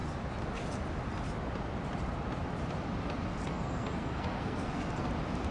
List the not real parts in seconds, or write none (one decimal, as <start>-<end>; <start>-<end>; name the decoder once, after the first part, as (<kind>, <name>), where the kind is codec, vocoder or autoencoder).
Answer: 3.5-5.1 (codec, SNAC)